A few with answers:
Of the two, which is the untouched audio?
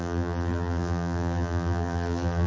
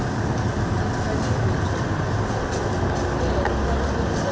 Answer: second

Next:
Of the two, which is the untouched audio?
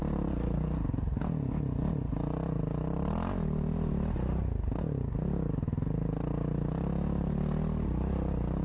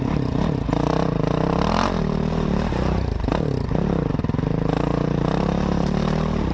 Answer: first